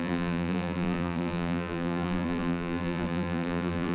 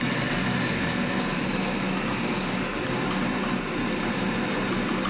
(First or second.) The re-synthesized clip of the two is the first